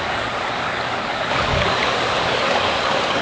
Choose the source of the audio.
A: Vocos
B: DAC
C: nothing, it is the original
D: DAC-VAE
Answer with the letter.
B